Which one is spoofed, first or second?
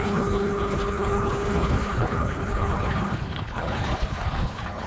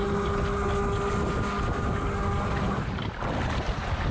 first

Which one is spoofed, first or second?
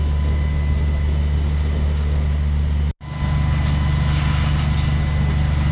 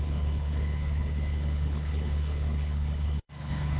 second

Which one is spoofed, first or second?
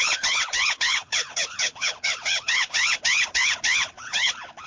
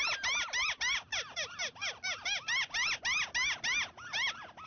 first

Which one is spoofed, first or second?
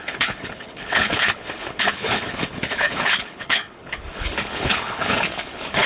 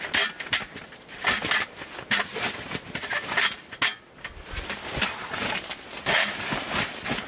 first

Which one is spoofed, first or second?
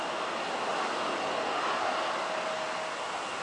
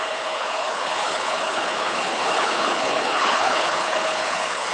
second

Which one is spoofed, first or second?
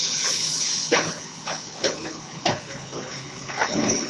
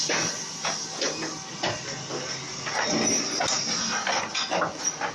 first